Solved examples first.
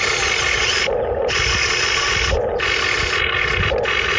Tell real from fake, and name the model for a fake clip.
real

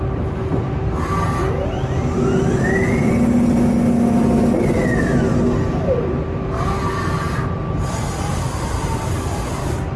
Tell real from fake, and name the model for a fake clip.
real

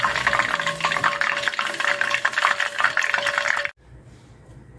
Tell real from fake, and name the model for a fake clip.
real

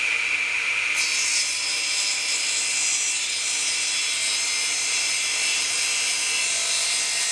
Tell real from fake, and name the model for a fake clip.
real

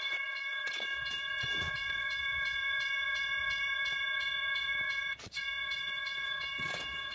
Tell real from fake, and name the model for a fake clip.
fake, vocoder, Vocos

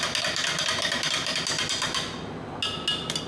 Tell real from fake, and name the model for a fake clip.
real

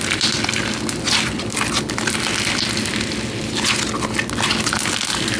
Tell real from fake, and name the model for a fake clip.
real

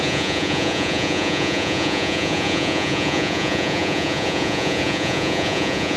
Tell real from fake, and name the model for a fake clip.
fake, vocoder, Vocos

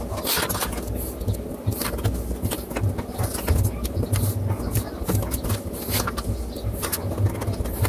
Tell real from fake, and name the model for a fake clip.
real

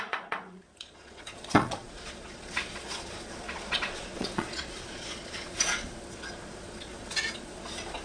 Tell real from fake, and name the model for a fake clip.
fake, vocoder, Vocos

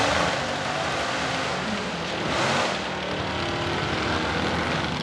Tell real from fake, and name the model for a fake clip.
real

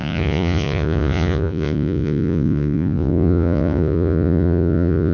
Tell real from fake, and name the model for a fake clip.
fake, vocoder, Vocos